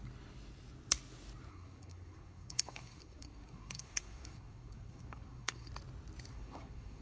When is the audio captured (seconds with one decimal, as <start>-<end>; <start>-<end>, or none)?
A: 0.0-1.5; 5.7-6.3